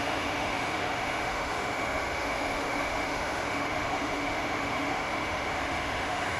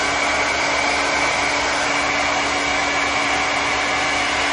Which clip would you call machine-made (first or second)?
first